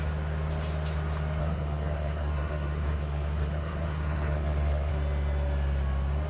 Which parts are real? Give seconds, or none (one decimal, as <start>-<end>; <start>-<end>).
0.0-1.4; 4.9-6.3